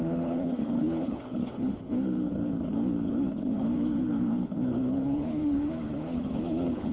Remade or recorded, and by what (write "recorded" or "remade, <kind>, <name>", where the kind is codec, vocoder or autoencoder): remade, codec, HILCodec